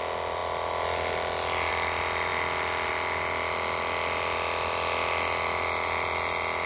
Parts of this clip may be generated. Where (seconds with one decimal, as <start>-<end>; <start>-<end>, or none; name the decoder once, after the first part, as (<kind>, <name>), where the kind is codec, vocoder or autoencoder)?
none